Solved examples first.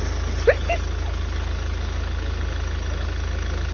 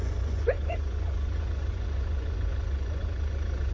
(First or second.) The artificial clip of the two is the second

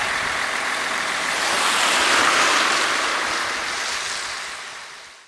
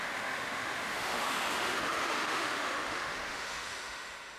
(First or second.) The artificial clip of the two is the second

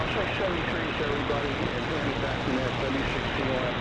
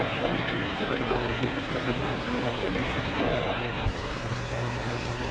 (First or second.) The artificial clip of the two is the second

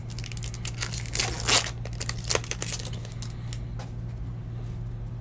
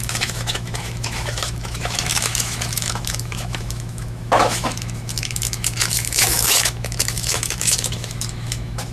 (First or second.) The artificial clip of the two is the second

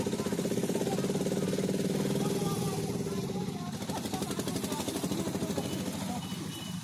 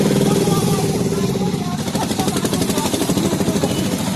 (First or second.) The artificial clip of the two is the second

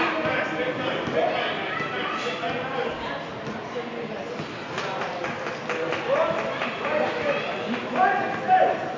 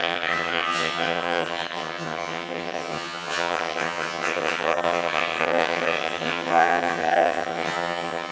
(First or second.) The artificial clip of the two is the second